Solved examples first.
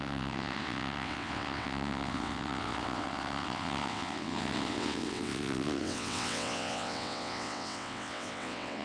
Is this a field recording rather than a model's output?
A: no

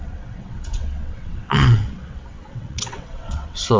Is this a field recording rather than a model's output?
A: no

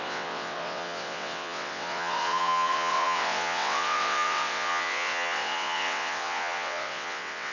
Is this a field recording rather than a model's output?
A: no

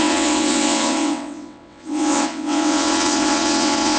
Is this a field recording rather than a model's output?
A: no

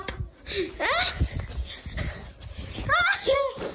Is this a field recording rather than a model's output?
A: yes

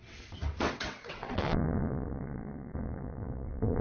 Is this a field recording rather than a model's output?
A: no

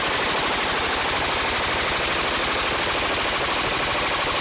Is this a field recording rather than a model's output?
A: yes